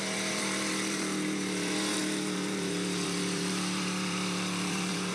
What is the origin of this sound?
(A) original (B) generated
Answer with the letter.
B